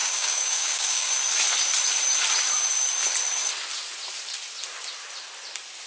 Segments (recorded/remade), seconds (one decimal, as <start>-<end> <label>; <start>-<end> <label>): 0.0-1.1 remade; 1.1-5.9 recorded

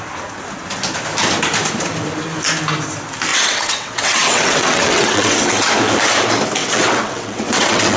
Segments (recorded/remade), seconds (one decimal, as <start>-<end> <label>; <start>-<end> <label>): 0.0-3.3 recorded; 3.3-5.7 remade; 5.7-6.6 recorded; 6.6-8.0 remade